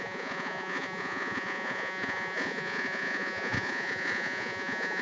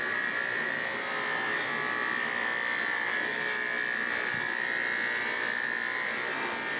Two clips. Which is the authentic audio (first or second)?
second